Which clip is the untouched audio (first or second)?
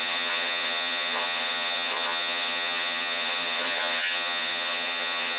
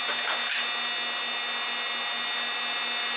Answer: second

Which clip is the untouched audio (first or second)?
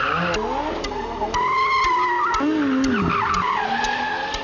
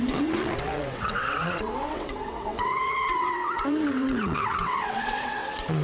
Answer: first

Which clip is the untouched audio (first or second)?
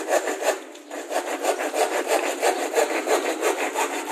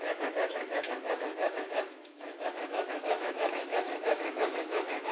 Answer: first